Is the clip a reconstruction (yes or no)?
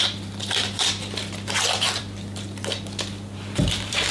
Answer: yes